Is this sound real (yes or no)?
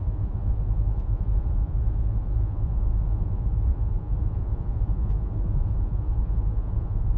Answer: no